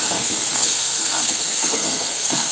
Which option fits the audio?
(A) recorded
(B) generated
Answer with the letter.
B